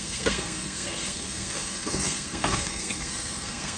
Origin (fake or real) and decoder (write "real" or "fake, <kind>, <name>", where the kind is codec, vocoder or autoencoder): fake, codec, SNAC